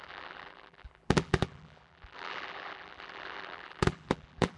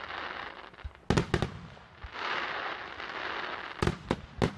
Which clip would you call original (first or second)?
second